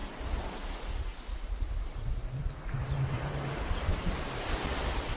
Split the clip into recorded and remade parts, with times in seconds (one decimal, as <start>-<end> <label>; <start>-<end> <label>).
0.0-5.2 recorded